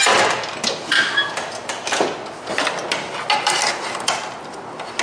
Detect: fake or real real